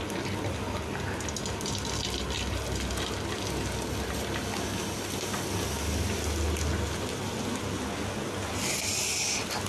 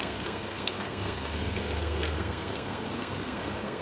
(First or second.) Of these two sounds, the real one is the first